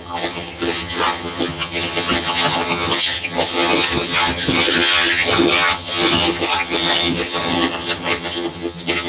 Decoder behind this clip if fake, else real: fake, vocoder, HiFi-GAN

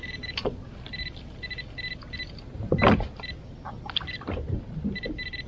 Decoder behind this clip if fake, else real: real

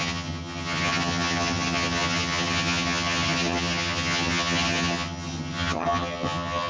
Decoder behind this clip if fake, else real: fake, vocoder, HiFi-GAN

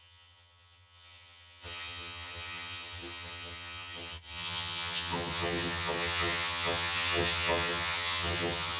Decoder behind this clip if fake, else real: fake, vocoder, HiFi-GAN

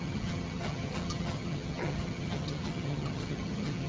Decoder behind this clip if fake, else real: fake, vocoder, HiFi-GAN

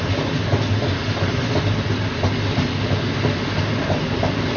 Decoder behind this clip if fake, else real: real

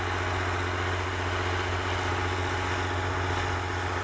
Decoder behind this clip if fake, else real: real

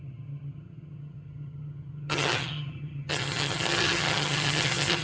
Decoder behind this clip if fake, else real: fake, vocoder, HiFi-GAN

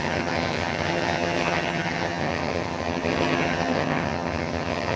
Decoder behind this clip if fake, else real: fake, vocoder, HiFi-GAN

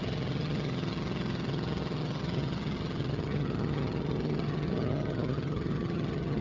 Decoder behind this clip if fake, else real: fake, vocoder, HiFi-GAN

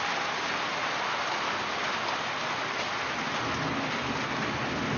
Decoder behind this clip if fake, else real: real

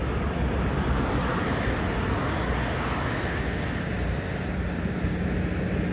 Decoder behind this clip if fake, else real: real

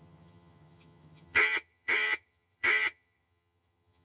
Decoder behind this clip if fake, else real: fake, vocoder, HiFi-GAN